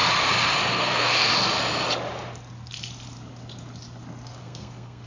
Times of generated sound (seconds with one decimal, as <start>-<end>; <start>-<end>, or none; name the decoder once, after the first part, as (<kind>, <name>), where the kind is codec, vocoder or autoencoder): 0.7-1.3 (codec, SNAC); 4.4-5.1